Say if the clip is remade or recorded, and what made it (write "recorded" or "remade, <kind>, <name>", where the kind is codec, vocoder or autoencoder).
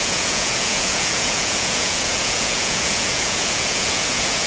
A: remade, vocoder, Vocos